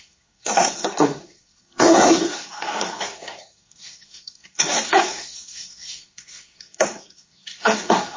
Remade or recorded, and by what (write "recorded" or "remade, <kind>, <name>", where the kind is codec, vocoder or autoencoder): remade, codec, SNAC